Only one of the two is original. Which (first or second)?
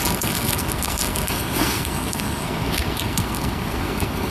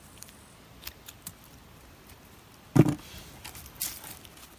second